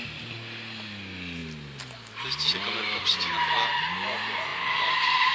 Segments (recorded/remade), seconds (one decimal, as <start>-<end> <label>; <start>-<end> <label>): 0.0-4.5 recorded; 4.5-5.3 remade